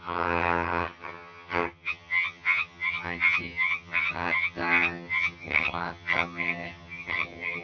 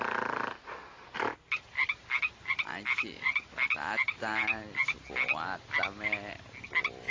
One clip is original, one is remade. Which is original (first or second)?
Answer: second